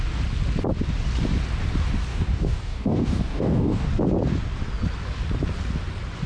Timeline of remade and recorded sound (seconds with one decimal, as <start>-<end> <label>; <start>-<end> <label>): 0.0-2.1 recorded; 2.1-3.9 remade; 3.9-6.3 recorded